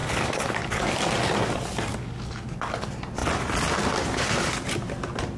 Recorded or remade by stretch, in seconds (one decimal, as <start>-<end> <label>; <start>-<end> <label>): 0.0-0.9 remade; 0.9-1.9 recorded; 1.9-2.7 remade; 2.7-5.4 recorded